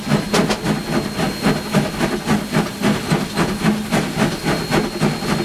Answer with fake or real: real